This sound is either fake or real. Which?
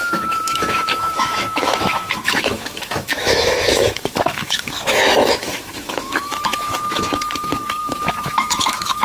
fake